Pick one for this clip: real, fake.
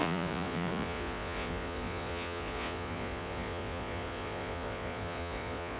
fake